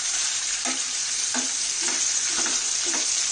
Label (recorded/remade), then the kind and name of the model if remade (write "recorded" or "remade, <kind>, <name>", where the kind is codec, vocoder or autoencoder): remade, vocoder, BigVGAN v2